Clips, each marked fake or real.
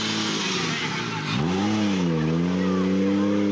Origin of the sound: real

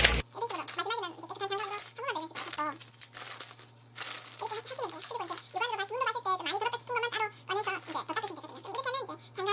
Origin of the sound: real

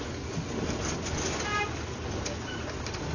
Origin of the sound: real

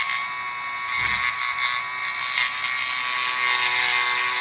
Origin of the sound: real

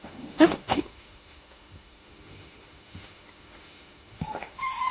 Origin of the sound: fake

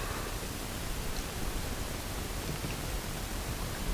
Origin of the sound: real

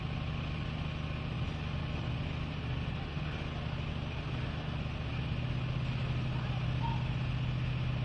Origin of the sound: real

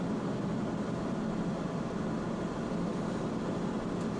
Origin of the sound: real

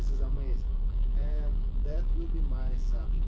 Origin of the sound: fake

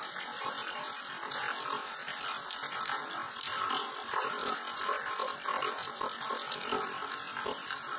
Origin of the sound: real